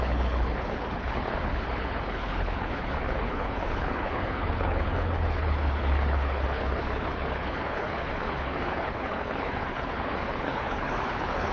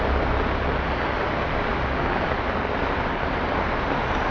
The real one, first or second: second